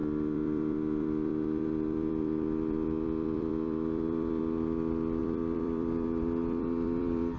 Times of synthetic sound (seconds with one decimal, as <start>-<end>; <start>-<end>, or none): 0.0-4.4; 5.2-7.4